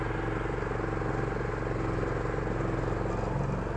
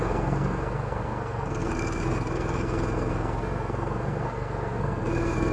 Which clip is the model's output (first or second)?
second